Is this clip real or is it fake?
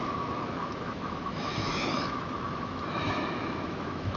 fake